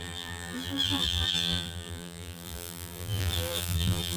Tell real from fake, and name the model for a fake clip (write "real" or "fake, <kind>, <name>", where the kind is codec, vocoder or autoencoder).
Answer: fake, vocoder, BigVGAN v2